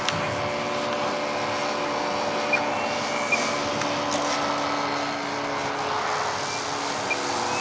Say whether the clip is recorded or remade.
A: recorded